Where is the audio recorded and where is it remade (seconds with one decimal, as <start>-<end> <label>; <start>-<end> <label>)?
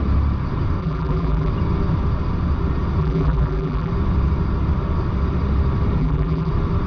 0.0-0.8 recorded; 0.8-1.5 remade; 1.5-3.0 recorded; 3.0-3.9 remade; 3.9-6.0 recorded; 6.0-6.5 remade; 6.5-6.9 recorded